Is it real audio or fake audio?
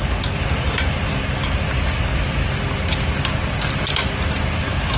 real